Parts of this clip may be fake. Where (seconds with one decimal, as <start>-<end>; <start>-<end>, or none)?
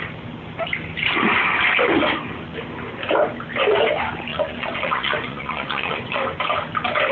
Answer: 4.3-6.2